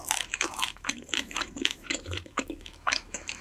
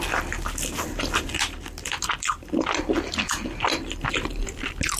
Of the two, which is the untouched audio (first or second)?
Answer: second